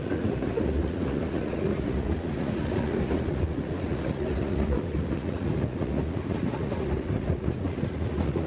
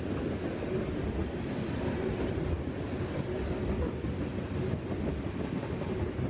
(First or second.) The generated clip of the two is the first